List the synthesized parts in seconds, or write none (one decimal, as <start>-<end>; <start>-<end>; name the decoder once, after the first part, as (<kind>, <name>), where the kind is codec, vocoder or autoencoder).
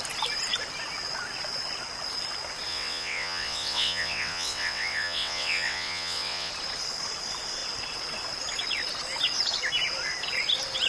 2.7-6.5 (vocoder, WaveNeXt)